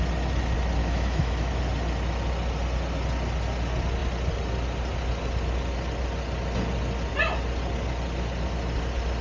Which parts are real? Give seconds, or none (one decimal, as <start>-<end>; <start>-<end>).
0.0-0.8; 1.6-9.2